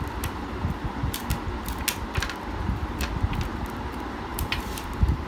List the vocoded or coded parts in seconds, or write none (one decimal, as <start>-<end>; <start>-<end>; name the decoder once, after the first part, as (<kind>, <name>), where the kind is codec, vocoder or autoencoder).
4.3-5.3 (vocoder, BigVGAN v2)